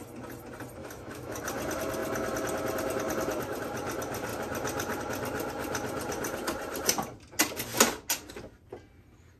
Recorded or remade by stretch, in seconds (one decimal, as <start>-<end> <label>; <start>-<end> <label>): 0.0-0.8 recorded; 0.8-1.4 remade; 1.4-9.4 recorded